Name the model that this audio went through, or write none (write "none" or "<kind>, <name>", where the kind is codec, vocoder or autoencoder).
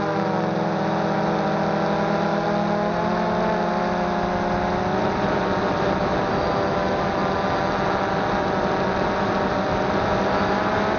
none